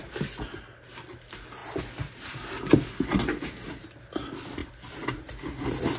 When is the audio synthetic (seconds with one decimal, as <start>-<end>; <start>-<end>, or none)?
none

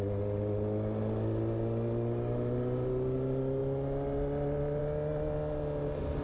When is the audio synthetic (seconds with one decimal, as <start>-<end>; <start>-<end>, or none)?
none

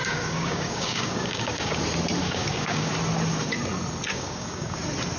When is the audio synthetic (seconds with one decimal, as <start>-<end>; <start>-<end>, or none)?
0.0-1.8; 2.2-2.9; 4.1-4.8

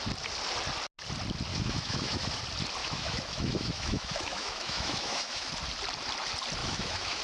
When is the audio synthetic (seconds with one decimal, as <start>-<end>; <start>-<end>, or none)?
1.5-2.4; 2.8-5.5; 6.6-7.2

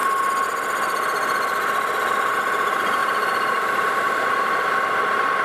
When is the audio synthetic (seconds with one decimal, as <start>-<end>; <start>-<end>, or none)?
3.0-4.7